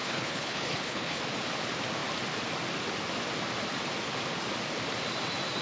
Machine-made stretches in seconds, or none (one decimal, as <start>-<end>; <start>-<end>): 0.0-1.2